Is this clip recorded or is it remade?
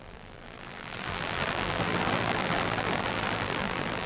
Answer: remade